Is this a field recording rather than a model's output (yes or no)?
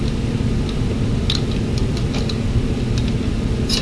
yes